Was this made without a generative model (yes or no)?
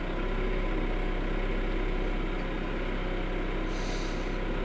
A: yes